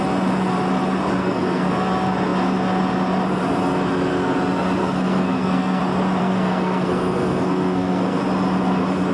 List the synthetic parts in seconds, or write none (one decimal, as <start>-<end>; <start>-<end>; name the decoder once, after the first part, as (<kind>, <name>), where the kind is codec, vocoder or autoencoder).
1.2-1.7 (codec, SNAC); 4.8-5.8; 6.2-8.2